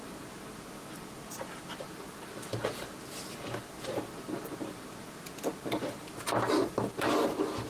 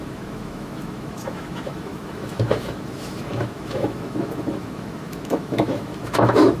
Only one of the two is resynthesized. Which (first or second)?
second